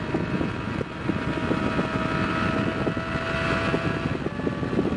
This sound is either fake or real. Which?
real